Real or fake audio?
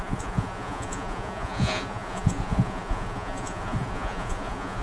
fake